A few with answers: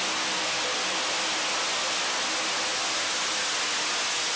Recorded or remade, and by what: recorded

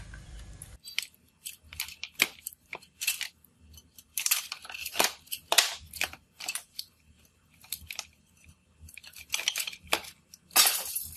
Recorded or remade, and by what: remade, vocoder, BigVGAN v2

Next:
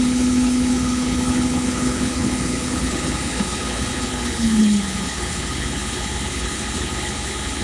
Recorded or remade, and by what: remade, codec, HILCodec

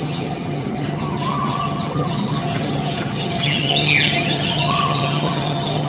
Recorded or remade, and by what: remade, vocoder, HiFi-GAN